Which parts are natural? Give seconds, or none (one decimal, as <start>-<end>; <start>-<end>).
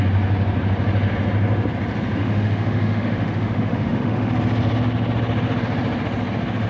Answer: 0.0-2.2; 4.3-6.7